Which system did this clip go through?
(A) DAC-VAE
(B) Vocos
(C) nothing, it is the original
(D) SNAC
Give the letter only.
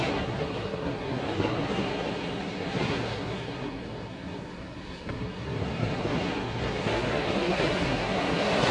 D